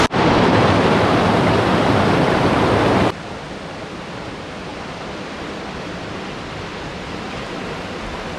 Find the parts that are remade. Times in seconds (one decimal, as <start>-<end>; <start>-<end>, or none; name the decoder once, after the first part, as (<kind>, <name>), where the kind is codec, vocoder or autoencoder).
4.7-7.6 (vocoder, BigVGAN v2)